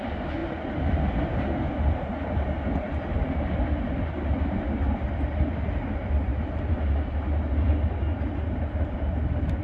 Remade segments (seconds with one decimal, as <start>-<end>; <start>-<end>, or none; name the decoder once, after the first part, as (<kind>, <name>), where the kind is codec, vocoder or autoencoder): none